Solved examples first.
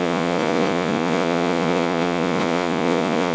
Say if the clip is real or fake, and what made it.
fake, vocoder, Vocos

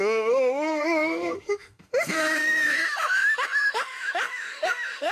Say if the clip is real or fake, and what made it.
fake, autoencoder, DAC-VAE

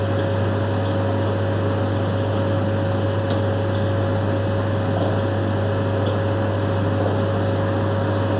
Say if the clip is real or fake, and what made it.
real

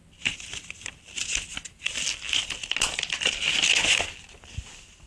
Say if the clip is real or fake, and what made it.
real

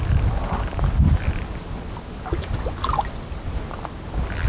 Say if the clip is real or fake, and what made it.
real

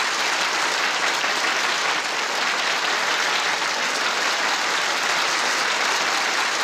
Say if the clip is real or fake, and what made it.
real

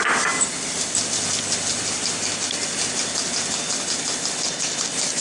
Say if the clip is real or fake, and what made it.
real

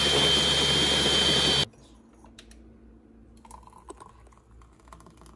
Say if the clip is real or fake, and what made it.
real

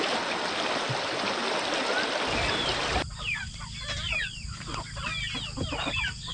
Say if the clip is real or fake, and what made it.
real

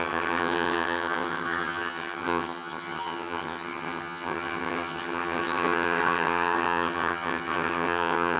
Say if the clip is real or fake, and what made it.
fake, vocoder, HiFi-GAN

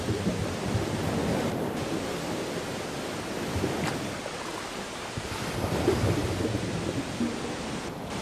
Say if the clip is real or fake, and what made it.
real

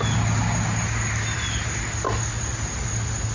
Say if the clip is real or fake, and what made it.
real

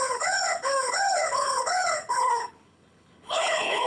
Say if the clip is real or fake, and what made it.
fake, codec, HILCodec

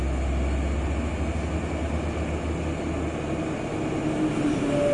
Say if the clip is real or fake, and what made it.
real